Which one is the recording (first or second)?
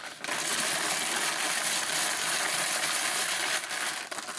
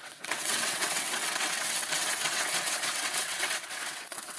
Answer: first